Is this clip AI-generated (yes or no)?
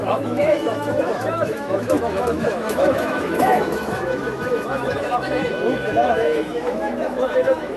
yes